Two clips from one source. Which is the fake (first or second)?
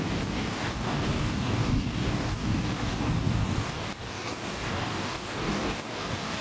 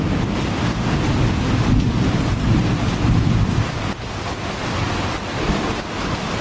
first